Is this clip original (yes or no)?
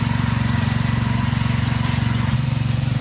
no